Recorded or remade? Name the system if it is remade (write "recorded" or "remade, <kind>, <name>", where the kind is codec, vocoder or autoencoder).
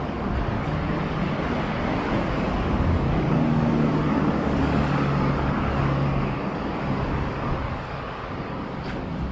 remade, codec, DAC